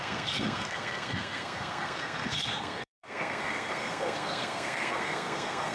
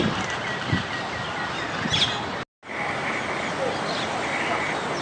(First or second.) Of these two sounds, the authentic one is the second